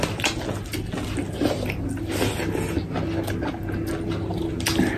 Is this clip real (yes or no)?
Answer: yes